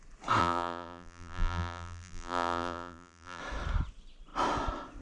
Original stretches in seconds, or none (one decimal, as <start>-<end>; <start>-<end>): 0.0-0.4; 3.4-5.0